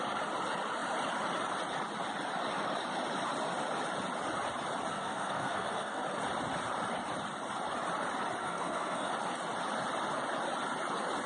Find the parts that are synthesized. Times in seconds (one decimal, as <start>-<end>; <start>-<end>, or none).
4.9-6.0; 8.4-9.1